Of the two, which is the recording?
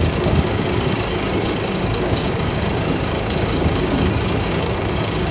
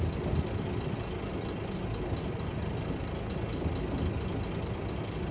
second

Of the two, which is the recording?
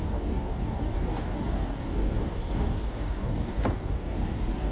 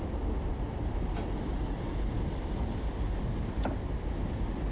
second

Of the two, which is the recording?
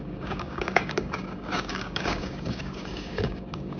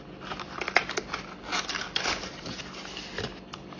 second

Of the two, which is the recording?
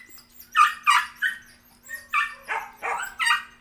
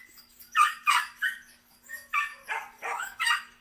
first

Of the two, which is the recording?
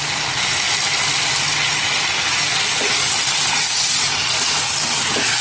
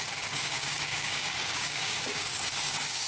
first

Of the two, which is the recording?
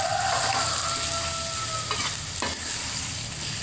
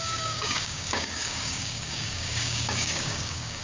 first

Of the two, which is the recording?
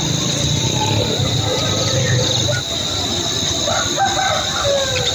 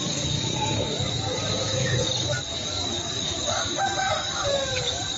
first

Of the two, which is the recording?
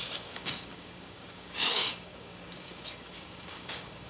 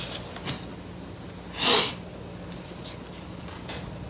second